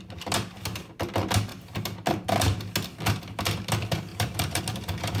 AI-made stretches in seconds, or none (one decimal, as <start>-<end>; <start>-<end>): 4.1-4.6